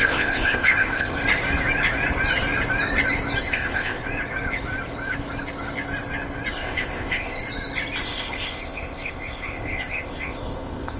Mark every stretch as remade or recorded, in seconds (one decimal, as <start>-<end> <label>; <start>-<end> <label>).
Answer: 0.0-1.2 remade; 1.2-3.4 recorded; 3.4-4.0 remade; 4.0-6.5 recorded; 6.5-7.4 remade; 7.4-8.0 recorded; 8.0-11.0 remade